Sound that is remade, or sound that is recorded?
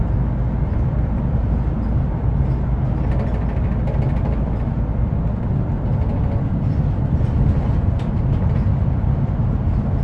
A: recorded